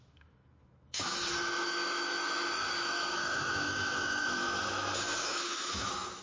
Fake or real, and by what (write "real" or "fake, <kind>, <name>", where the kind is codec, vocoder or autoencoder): fake, autoencoder, DAC-VAE